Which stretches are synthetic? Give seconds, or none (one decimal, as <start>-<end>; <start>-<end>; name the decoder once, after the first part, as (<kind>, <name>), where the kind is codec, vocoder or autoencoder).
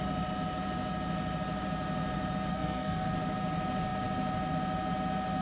2.5-3.1 (codec, SNAC)